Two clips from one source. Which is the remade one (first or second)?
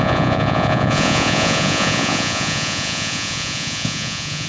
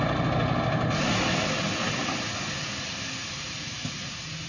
first